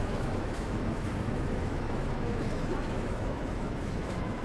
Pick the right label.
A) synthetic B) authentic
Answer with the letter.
A